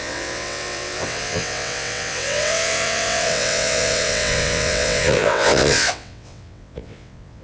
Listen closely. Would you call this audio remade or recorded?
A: remade